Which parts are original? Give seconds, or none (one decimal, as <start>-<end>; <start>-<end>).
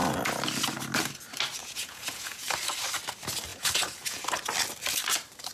0.0-1.6; 2.6-3.5; 4.2-5.5